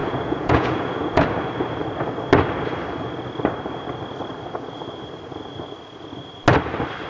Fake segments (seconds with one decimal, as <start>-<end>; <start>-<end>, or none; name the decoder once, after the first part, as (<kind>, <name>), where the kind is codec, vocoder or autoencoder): 0.0-1.2 (vocoder, Vocos)